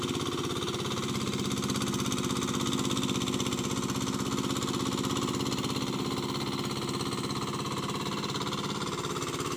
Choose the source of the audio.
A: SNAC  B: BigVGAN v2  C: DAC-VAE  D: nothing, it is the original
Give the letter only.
D